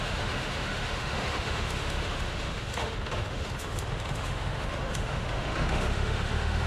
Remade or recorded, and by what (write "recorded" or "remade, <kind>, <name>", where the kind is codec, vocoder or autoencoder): remade, autoencoder, DAC-VAE